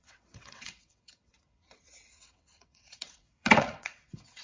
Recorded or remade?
remade